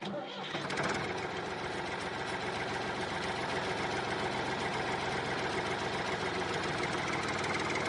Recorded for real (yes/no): yes